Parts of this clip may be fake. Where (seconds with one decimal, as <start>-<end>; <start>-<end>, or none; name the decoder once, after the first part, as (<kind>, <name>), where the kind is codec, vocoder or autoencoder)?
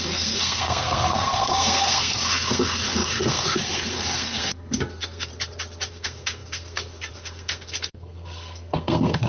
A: 0.0-5.3 (codec, SNAC); 5.9-9.3